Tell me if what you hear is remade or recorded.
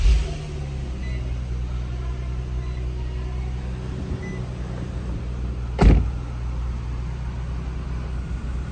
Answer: recorded